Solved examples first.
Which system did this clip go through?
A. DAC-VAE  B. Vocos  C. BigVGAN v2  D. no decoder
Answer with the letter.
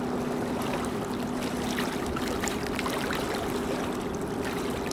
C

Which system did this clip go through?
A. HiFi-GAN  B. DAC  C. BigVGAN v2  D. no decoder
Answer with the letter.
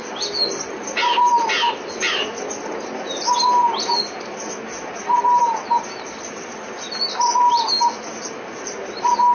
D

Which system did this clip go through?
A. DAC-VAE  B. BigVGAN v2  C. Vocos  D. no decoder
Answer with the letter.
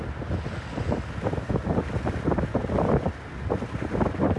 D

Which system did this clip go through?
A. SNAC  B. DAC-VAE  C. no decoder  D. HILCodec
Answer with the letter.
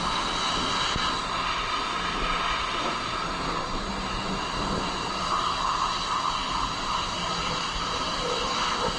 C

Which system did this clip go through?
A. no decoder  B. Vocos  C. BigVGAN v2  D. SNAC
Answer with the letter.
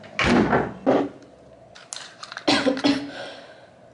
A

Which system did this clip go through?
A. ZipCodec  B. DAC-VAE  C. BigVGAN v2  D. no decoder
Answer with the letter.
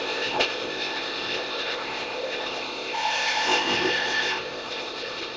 A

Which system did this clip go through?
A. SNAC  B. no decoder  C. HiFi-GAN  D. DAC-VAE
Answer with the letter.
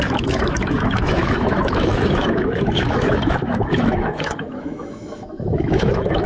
D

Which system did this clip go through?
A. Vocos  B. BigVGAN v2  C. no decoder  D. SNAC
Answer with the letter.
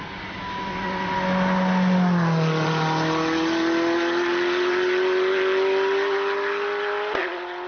C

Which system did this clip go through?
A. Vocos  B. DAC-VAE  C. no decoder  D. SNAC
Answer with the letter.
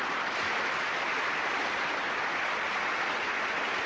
C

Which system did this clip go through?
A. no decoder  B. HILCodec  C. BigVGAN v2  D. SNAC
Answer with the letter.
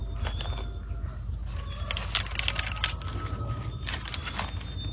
A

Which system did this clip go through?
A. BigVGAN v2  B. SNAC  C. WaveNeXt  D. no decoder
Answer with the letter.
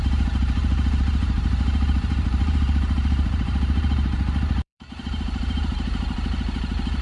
A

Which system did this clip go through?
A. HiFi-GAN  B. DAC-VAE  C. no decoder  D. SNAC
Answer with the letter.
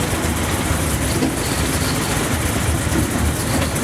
C